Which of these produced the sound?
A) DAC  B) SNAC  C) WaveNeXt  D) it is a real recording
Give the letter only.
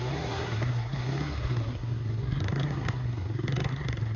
B